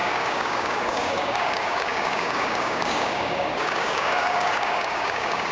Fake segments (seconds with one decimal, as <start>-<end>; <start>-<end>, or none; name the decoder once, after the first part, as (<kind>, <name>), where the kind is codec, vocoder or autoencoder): 0.0-5.5 (codec, DAC)